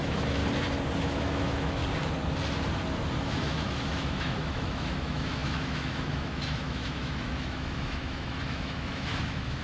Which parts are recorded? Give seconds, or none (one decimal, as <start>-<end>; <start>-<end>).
0.4-1.0; 1.8-3.2